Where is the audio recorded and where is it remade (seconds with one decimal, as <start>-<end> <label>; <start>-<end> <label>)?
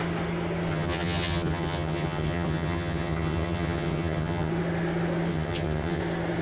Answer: 0.0-0.7 recorded; 0.7-4.5 remade; 4.5-5.3 recorded; 5.3-6.0 remade; 6.0-6.4 recorded